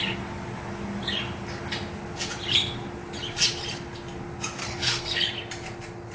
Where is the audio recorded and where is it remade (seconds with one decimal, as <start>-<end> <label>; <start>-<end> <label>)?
0.0-4.6 recorded; 4.6-5.2 remade; 5.2-6.1 recorded